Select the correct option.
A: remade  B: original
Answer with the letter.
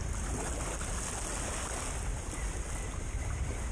B